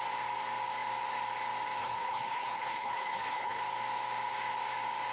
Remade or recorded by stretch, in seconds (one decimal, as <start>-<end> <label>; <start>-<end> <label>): 0.0-1.8 recorded; 1.8-3.6 remade; 3.6-5.1 recorded